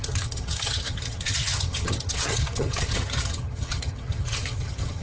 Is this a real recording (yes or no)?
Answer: no